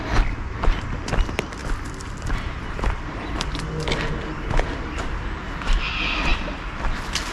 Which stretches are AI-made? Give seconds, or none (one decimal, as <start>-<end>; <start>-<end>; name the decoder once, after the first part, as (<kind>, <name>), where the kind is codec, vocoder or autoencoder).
none